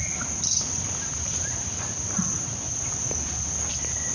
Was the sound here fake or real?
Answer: real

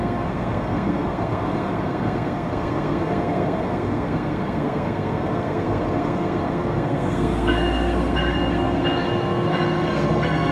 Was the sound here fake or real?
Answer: fake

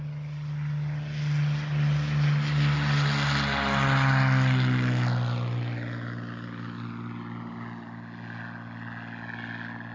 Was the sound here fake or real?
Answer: real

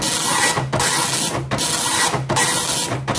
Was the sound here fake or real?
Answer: real